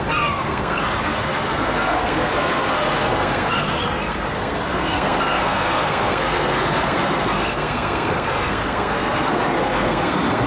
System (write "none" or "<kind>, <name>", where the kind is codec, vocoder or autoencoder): codec, SNAC